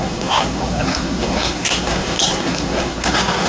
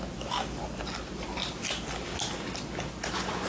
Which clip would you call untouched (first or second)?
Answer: second